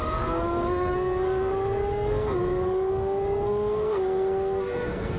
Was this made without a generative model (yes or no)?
no